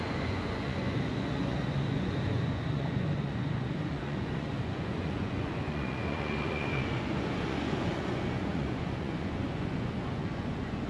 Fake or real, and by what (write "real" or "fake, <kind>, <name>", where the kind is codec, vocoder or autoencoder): fake, vocoder, Vocos